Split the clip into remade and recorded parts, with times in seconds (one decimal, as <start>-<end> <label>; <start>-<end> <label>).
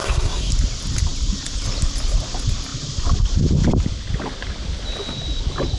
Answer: 0.0-0.5 remade; 0.5-5.8 recorded